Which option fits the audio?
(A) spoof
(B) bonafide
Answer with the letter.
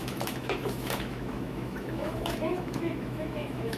A